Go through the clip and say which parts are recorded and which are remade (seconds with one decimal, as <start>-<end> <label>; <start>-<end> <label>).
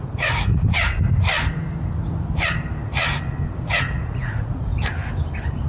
0.0-1.3 remade; 1.3-3.7 recorded; 3.7-4.7 remade; 4.7-5.7 recorded